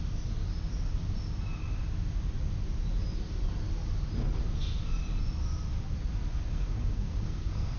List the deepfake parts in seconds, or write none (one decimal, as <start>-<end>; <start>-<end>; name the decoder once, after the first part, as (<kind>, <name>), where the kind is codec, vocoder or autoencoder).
6.5-7.8 (codec, SNAC)